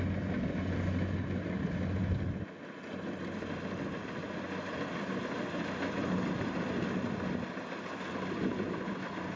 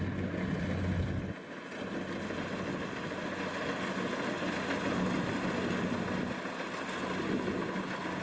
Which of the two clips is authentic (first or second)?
second